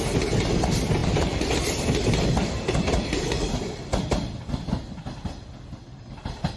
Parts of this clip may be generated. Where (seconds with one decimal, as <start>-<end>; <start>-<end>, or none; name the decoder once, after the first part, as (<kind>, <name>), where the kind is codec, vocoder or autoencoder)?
none